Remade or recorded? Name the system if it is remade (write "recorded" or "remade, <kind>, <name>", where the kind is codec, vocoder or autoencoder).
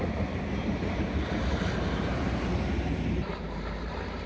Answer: remade, vocoder, BigVGAN v2